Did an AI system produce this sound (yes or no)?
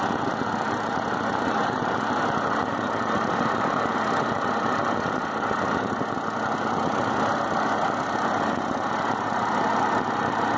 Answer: no